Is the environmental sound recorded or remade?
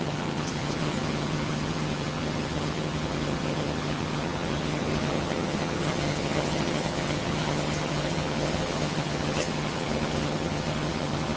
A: remade